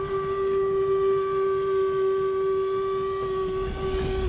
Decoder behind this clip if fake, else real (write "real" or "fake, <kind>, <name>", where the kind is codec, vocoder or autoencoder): real